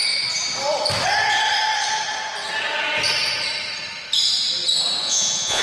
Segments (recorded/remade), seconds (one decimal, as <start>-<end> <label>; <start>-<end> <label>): 0.0-5.0 recorded; 5.0-5.6 remade